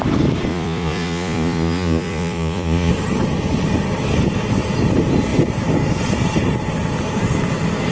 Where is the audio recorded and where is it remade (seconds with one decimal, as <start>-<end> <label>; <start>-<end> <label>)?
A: 0.0-0.5 recorded; 0.5-2.9 remade; 2.9-7.9 recorded